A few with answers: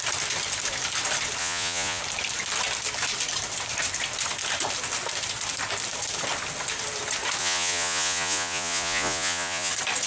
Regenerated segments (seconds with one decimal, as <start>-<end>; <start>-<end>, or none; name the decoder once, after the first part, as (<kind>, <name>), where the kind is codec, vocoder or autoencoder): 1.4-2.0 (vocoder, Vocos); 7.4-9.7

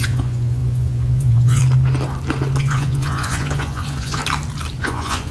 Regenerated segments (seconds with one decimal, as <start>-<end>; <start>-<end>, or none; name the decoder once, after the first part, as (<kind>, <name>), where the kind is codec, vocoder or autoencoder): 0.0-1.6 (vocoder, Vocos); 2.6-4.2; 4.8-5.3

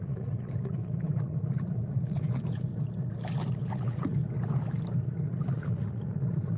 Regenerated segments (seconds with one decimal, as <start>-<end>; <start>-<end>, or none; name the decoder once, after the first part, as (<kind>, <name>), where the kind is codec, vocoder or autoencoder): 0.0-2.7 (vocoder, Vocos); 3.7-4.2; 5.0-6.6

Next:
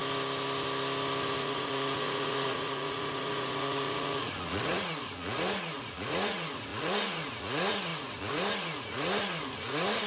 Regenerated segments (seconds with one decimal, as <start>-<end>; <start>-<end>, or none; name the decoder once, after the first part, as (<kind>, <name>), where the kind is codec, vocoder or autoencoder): 1.4-10.1 (vocoder, Vocos)

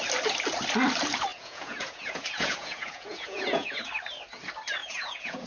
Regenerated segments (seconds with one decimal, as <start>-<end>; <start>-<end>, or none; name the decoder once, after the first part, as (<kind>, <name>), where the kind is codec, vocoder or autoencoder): 1.3-3.9 (vocoder, Vocos); 4.8-5.5

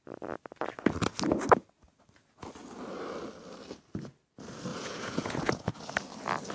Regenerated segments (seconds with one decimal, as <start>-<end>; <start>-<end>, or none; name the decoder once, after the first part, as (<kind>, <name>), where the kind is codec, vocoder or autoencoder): 4.7-5.8 (vocoder, Vocos)

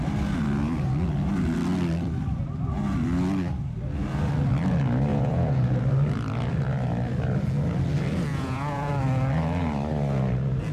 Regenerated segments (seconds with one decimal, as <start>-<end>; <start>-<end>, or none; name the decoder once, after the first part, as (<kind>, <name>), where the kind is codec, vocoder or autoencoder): 5.1-5.8 (vocoder, Vocos); 8.3-8.9

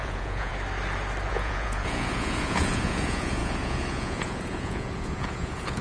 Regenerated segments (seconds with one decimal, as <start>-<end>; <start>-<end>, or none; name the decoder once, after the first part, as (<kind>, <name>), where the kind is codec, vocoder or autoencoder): 0.0-0.5 (vocoder, Vocos); 1.3-5.8